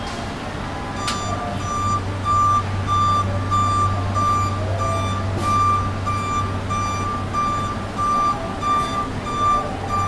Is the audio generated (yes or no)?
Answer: no